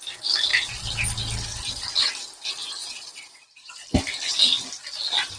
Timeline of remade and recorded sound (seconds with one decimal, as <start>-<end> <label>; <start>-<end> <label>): 0.0-2.8 recorded; 2.8-3.7 remade; 3.7-5.4 recorded